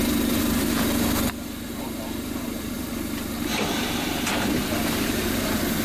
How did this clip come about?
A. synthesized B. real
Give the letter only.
A